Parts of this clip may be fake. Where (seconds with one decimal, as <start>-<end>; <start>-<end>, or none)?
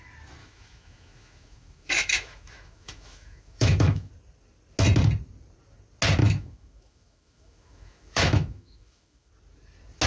0.4-4.1; 6.2-9.3